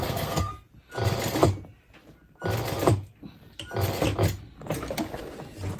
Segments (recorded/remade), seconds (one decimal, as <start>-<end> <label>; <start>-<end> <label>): 0.0-0.5 remade; 0.5-5.8 recorded